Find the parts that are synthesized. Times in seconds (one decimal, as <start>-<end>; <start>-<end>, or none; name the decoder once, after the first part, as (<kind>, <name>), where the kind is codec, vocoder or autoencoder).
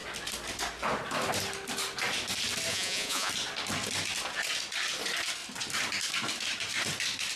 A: 2.7-3.3 (vocoder, Vocos)